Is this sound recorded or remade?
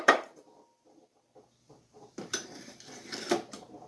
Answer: remade